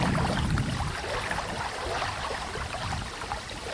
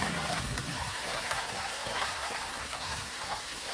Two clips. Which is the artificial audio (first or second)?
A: second